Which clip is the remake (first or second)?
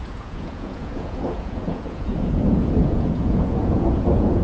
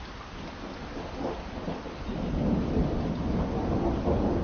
first